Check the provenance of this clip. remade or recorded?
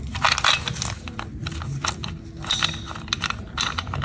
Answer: recorded